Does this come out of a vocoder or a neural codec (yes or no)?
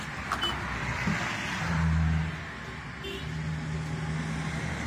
no